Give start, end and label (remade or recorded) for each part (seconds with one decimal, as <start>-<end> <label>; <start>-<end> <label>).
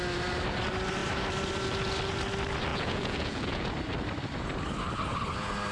0.0-2.7 recorded; 2.7-3.7 remade; 3.7-5.7 recorded